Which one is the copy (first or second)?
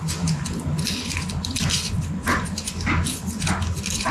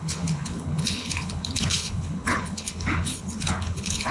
second